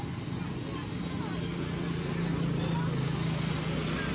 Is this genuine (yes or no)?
yes